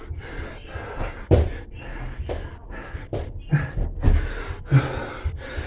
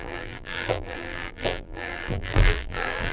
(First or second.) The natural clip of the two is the first